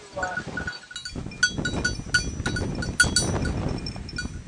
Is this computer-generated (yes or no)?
no